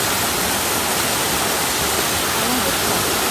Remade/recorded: recorded